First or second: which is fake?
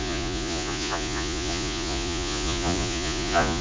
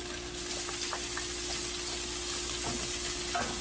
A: first